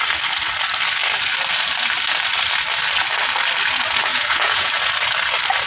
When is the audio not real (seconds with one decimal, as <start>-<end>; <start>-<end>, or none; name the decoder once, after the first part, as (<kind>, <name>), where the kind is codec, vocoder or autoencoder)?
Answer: 4.1-4.7 (vocoder, Vocos)